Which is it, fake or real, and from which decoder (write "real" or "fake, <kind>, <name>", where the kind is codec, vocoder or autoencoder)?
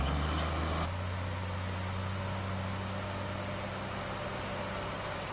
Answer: real